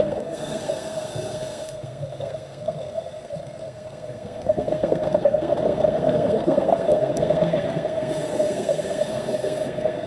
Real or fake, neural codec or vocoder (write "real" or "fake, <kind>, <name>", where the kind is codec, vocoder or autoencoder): fake, codec, SNAC